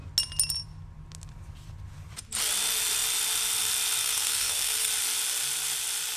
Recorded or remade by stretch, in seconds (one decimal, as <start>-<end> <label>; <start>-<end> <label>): 0.0-4.0 recorded; 4.0-4.9 remade; 4.9-6.2 recorded